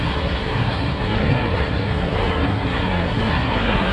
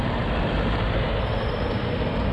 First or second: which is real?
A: second